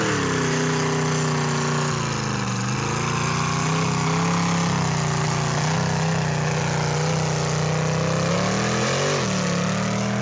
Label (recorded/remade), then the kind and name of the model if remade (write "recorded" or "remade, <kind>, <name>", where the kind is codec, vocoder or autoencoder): recorded